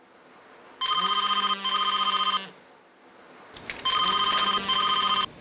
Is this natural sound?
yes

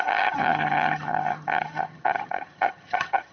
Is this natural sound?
no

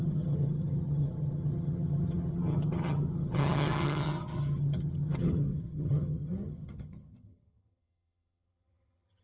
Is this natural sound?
no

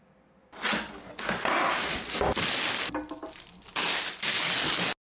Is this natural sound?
yes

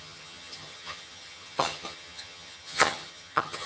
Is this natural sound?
no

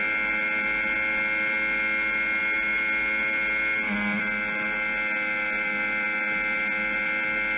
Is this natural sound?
yes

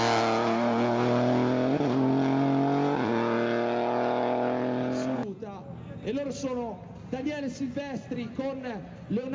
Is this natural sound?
yes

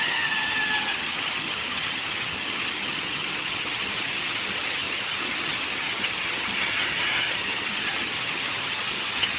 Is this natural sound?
no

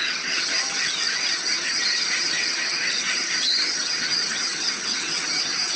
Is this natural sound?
no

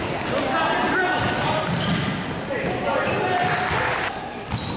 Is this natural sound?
yes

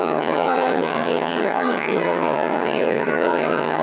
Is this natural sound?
no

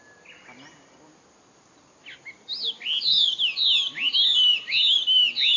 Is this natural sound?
yes